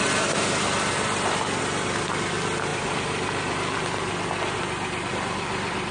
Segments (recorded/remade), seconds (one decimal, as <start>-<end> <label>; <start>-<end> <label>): 0.0-5.9 recorded